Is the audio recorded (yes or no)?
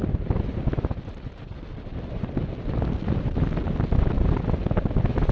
no